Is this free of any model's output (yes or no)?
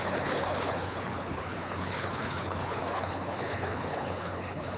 no